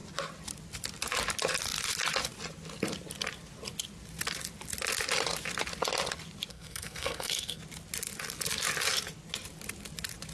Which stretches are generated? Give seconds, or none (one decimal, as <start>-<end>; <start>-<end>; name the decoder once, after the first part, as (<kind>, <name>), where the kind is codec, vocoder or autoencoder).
6.5-7.6 (codec, SNAC)